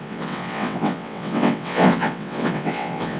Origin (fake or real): fake